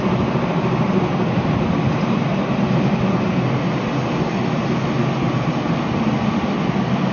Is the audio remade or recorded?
recorded